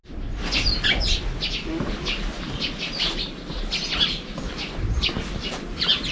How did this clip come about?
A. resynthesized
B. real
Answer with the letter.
B